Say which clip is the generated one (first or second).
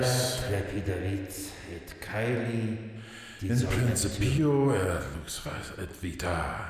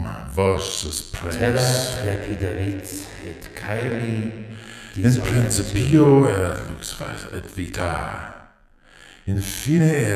second